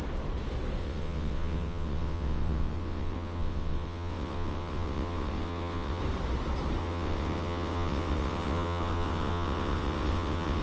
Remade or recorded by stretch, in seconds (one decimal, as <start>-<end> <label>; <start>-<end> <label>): 0.0-0.8 recorded; 0.8-6.0 remade; 6.0-6.8 recorded; 6.8-10.6 remade